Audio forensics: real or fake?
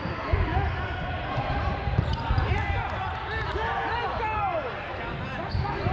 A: real